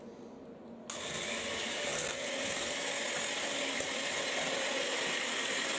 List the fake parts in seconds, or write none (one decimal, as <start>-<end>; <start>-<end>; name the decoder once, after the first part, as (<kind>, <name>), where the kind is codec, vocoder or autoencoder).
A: none